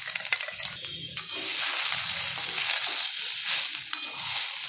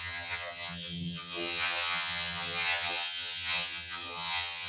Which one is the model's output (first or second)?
second